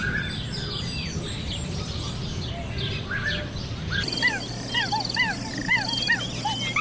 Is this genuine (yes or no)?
yes